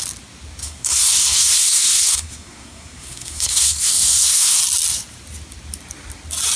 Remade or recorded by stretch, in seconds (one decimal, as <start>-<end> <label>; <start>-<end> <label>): 0.0-0.6 recorded; 0.6-4.6 remade; 4.6-6.6 recorded